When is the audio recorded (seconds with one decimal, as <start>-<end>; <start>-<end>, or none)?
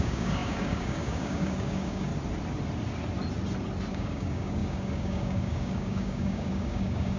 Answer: 2.1-3.9